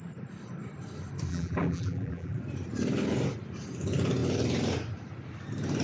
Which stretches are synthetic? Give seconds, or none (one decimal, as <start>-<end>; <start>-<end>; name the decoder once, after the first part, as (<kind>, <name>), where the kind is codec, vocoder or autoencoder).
1.3-2.4 (vocoder, BigVGAN v2)